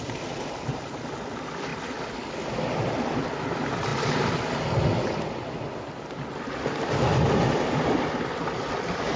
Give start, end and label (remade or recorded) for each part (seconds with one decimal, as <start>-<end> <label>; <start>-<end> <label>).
0.0-9.2 recorded